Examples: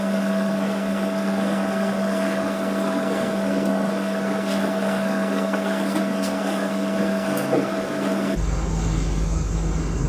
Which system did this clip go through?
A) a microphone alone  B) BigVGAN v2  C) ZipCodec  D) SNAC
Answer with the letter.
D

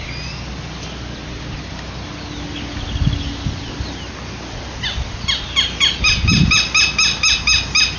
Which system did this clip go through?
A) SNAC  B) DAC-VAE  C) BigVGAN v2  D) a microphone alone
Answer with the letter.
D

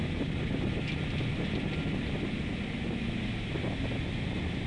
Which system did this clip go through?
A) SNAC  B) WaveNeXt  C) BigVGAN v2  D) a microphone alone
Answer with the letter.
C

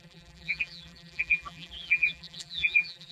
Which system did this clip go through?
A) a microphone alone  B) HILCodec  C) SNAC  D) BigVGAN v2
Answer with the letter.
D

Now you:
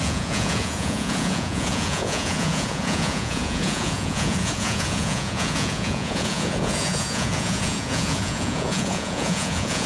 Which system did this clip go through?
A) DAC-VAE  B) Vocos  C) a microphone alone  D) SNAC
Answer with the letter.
B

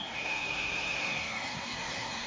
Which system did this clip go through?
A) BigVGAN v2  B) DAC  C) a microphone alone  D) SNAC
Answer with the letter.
D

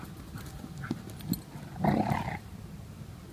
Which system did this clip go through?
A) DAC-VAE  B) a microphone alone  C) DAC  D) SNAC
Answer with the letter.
B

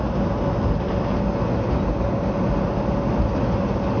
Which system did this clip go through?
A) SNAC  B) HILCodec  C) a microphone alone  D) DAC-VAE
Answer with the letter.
C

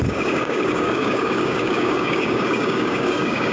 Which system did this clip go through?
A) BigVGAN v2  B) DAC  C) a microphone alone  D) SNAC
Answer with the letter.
B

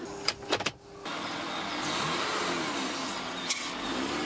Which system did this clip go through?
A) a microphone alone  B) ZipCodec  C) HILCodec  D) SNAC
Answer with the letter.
A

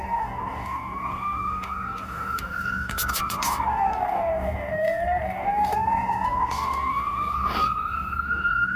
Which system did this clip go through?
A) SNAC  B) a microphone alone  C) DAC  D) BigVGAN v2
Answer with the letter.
C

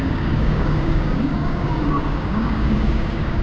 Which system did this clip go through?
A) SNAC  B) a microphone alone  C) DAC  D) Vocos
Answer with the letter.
C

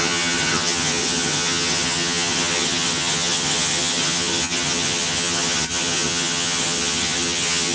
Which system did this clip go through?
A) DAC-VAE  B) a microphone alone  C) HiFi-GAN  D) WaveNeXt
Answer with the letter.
C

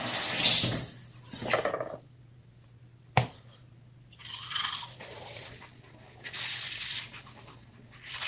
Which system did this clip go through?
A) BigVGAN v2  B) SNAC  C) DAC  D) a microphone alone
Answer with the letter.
D